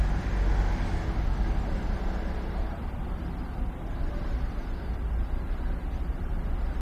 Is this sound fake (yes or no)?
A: no